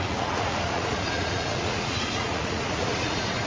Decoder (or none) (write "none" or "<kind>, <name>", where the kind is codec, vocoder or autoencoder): vocoder, Vocos